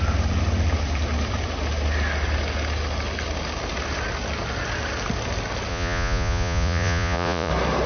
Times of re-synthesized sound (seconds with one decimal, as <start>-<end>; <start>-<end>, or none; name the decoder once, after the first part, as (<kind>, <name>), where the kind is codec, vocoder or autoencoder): 5.7-7.5 (vocoder, Vocos)